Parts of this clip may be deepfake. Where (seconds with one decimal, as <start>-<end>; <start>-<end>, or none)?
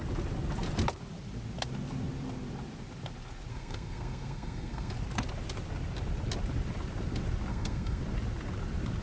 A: 3.5-4.9; 7.5-8.0